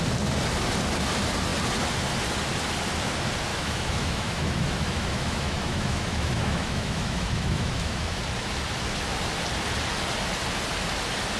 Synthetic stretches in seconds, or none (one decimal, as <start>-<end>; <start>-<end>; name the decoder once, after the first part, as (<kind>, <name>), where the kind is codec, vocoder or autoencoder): 3.5-8.2 (autoencoder, DAC-VAE)